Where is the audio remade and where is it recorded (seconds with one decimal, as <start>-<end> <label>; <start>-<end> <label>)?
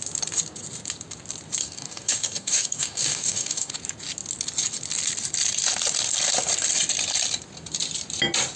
0.0-1.6 recorded; 1.6-3.7 remade; 3.7-8.6 recorded